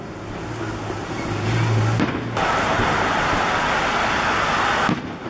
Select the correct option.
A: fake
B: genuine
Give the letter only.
B